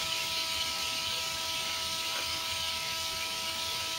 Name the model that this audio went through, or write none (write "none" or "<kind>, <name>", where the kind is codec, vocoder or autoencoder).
codec, DAC